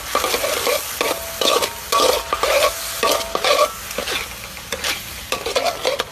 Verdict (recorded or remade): recorded